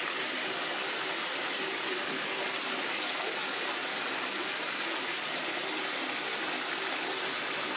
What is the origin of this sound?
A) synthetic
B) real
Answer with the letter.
B